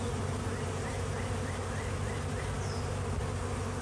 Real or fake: real